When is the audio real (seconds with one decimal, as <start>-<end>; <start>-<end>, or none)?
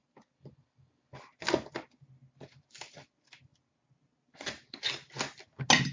0.0-5.9